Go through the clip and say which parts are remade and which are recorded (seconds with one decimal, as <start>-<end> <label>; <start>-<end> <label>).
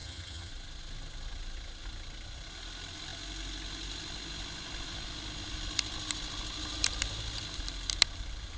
0.0-0.5 remade; 0.5-8.6 recorded